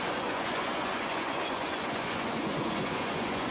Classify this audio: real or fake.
fake